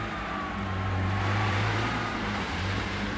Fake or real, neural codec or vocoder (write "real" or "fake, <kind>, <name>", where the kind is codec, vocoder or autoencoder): fake, vocoder, BigVGAN v2